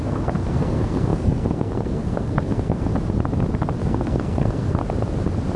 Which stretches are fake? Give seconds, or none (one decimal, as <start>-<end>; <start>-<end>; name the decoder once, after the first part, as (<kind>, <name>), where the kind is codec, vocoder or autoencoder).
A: 0.0-2.9 (codec, SNAC); 3.8-4.8